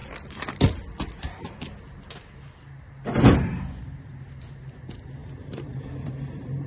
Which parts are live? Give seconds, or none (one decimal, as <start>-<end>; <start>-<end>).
0.0-5.2

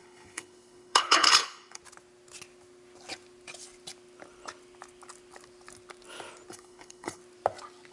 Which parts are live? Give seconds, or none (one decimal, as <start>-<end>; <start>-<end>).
1.8-6.5; 7.2-7.9

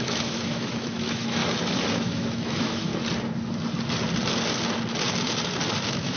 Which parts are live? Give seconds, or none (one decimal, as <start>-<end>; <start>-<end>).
1.4-1.9; 2.9-5.8

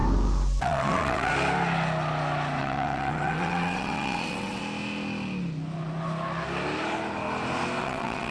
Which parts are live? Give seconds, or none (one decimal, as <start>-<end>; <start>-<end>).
0.0-0.6; 1.3-2.6; 4.6-7.8

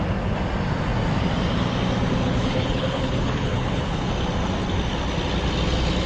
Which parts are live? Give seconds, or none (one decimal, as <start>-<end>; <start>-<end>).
0.0-2.2; 4.1-6.1